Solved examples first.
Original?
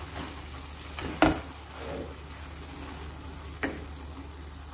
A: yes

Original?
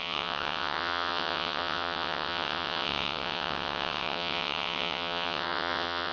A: no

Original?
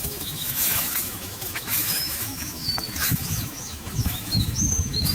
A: no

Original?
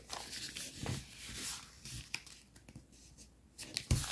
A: yes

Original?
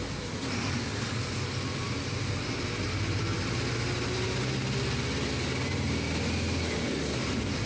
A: yes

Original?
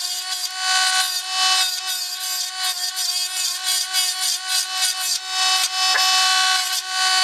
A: yes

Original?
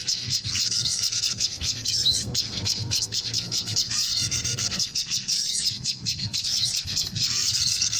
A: no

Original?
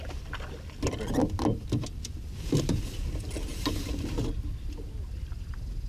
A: yes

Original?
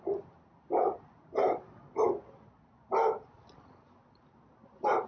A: yes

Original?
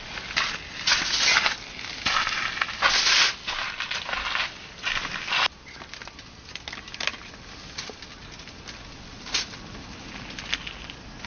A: yes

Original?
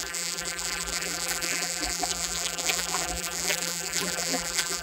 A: no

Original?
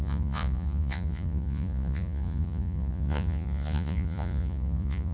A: no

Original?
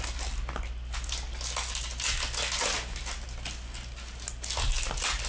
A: yes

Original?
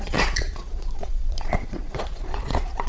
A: no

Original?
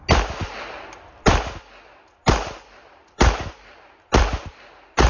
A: yes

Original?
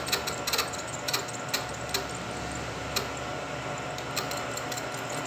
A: yes